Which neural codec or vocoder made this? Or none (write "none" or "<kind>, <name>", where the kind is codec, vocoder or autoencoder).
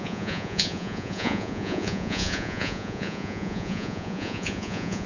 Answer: vocoder, Vocos